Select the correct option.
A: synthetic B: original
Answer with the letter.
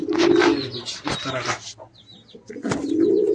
B